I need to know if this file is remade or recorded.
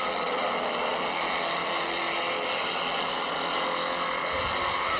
recorded